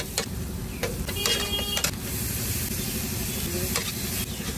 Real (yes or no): yes